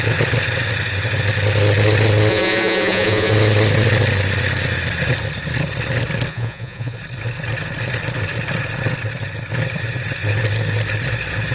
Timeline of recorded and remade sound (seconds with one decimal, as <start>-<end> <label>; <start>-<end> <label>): 0.0-2.3 recorded; 2.3-3.3 remade; 3.3-6.3 recorded; 6.3-7.0 remade; 7.0-11.5 recorded